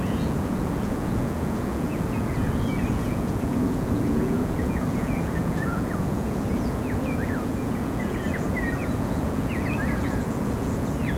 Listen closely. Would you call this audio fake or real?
fake